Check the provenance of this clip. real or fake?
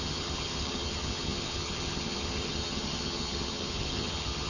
fake